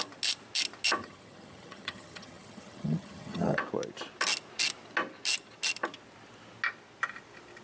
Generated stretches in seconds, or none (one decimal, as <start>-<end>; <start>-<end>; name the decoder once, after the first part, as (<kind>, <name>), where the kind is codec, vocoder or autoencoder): 1.0-3.6 (vocoder, HiFi-GAN)

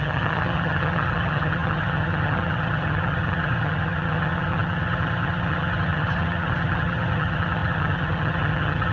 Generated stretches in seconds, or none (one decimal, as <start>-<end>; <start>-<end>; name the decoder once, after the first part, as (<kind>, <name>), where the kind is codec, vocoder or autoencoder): 0.0-8.9 (vocoder, HiFi-GAN)

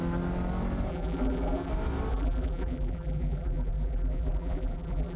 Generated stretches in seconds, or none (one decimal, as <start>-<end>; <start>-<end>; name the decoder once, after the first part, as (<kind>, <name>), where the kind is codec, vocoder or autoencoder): 0.9-1.7 (vocoder, BigVGAN v2); 2.1-5.2